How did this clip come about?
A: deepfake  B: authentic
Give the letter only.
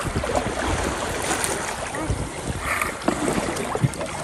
B